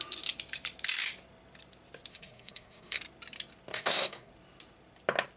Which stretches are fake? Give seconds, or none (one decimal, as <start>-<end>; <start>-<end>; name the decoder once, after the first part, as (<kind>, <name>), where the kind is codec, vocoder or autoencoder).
2.1-3.0 (codec, SNAC); 3.7-4.3